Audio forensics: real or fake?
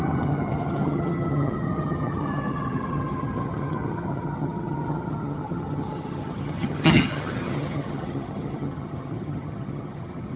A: fake